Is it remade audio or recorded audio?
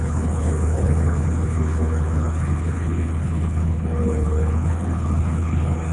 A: remade